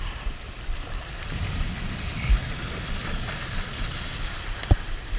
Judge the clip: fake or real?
real